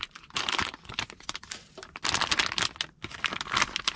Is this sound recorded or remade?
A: recorded